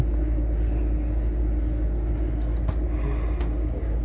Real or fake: real